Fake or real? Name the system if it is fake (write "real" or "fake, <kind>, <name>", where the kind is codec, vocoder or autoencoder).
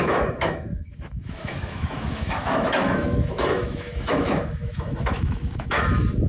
fake, autoencoder, DAC-VAE